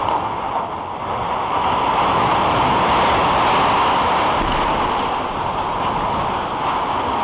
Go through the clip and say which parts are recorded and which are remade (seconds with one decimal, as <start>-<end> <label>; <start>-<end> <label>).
0.0-7.2 recorded